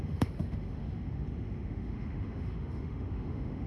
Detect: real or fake fake